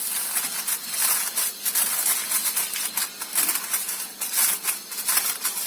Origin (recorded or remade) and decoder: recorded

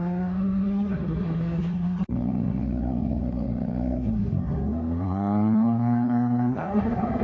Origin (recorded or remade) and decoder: remade, codec, SNAC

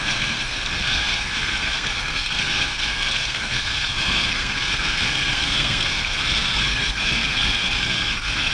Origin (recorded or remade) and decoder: remade, codec, SNAC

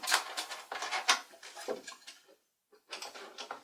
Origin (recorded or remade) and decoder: recorded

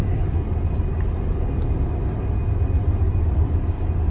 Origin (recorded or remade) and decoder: recorded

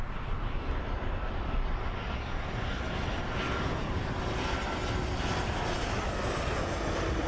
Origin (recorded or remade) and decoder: recorded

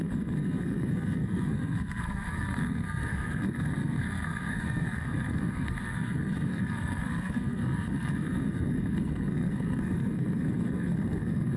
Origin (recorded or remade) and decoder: remade, codec, SNAC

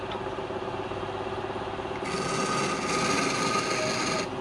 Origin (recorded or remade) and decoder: recorded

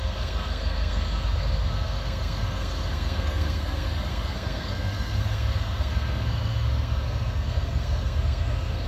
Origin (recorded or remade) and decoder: remade, codec, SNAC